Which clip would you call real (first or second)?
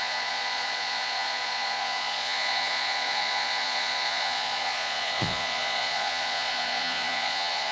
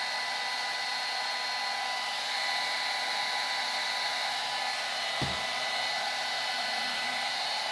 second